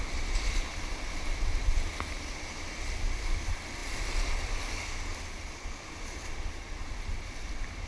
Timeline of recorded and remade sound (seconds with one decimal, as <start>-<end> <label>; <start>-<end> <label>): 0.0-7.9 recorded